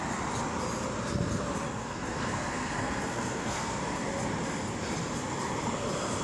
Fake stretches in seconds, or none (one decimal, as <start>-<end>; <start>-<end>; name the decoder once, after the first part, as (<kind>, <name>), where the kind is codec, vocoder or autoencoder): 1.8-3.8 (codec, SNAC)